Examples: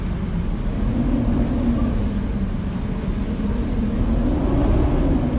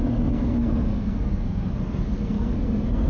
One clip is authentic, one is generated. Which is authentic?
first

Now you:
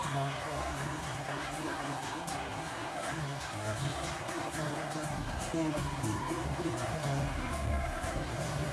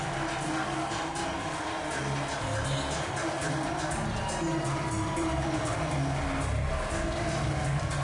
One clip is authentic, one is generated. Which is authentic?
second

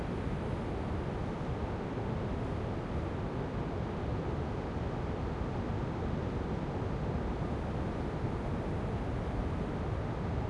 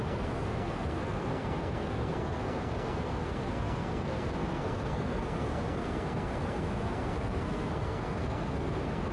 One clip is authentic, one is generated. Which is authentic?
first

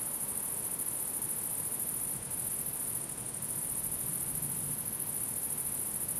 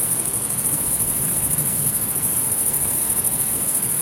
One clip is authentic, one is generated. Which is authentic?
first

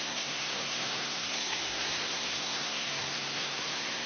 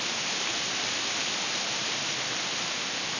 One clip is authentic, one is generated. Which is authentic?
second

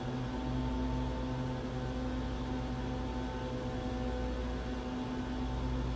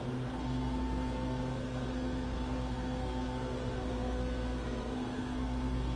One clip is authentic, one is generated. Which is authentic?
first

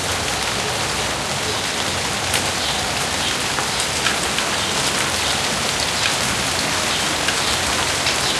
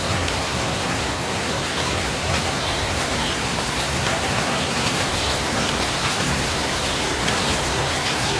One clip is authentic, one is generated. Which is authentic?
first